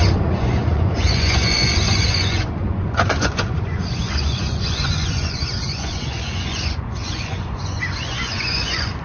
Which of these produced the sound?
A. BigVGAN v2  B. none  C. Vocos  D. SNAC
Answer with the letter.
C